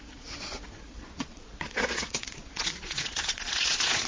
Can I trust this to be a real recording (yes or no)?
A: no